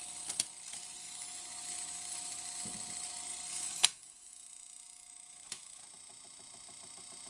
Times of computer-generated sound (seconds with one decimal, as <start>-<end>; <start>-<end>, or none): 1.0-2.6; 3.5-5.8